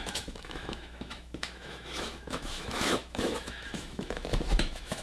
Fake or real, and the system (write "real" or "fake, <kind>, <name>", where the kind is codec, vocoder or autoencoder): fake, autoencoder, DAC-VAE